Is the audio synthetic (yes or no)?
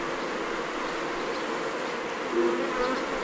no